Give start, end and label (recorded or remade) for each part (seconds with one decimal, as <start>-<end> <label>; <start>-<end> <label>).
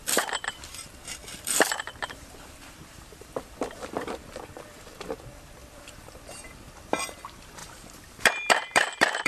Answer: 0.0-3.5 remade; 3.5-5.6 recorded; 5.6-6.2 remade; 6.2-7.6 recorded; 7.6-9.3 remade